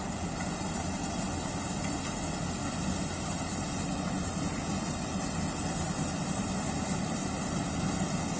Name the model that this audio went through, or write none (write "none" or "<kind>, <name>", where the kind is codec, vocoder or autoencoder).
none